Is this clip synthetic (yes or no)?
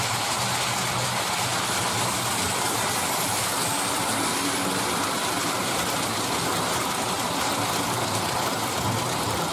no